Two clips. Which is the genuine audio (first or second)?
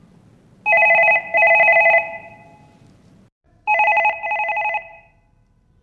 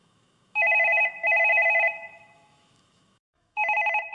first